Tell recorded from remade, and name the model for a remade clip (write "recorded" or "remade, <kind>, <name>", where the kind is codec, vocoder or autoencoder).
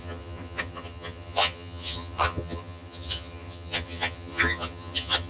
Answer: remade, vocoder, HiFi-GAN